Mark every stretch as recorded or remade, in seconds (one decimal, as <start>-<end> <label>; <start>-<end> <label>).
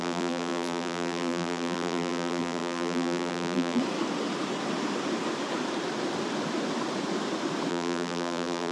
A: 0.0-3.8 remade; 3.8-7.7 recorded; 7.7-8.7 remade